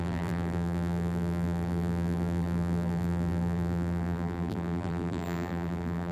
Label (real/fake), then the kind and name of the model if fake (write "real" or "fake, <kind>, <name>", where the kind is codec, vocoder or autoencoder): fake, vocoder, BigVGAN v2